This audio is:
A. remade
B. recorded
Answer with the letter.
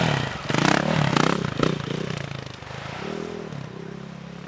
B